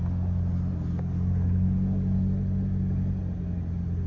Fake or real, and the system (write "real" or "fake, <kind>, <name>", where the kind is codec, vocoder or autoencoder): real